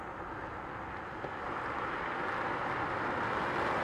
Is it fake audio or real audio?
real